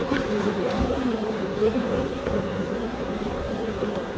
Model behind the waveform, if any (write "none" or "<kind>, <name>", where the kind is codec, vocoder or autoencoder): codec, SNAC